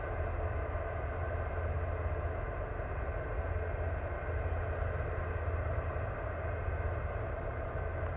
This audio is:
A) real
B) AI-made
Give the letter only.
A